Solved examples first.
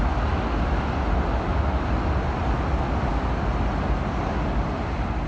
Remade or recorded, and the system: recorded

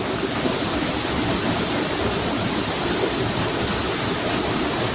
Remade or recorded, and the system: recorded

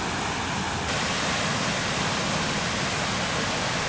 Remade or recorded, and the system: recorded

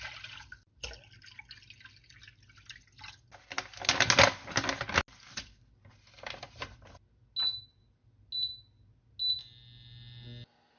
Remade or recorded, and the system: recorded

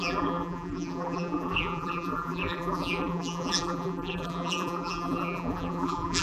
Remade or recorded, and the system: remade, vocoder, BigVGAN v2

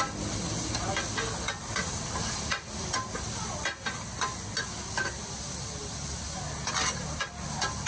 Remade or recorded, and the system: recorded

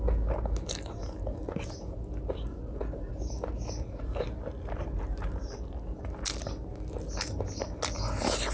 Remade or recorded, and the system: recorded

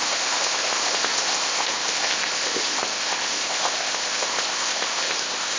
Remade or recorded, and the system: remade, codec, ZipCodec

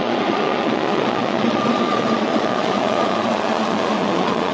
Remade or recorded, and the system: remade, vocoder, Vocos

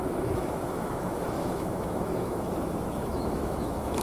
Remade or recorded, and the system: remade, autoencoder, DAC-VAE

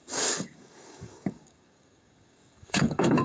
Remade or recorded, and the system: remade, codec, DAC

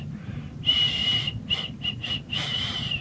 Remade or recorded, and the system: recorded